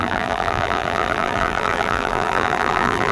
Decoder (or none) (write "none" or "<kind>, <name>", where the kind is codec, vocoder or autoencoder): vocoder, BigVGAN v2